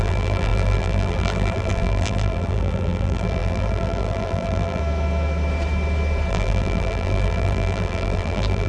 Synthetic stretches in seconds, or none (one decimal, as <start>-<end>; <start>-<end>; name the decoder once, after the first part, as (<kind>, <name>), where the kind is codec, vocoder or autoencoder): 0.0-4.8 (vocoder, BigVGAN v2); 6.3-8.7